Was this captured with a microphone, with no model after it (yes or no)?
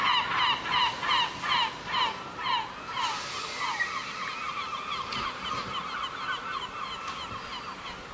yes